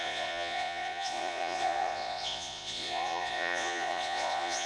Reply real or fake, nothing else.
fake